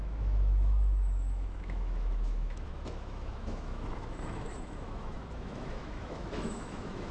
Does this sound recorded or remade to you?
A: remade